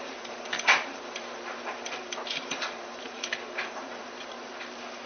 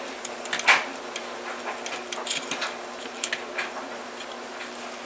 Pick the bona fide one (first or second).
second